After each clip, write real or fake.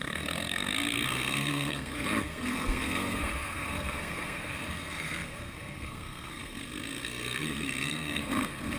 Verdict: fake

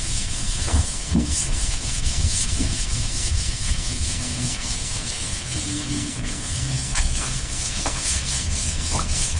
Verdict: fake